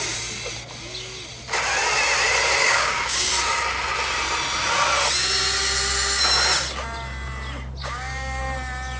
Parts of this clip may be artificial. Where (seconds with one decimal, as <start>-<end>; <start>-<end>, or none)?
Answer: 2.6-3.3; 7.8-8.4

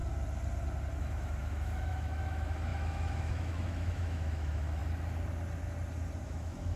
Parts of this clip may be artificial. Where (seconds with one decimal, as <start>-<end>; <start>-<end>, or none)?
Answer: 1.0-4.8; 6.2-6.8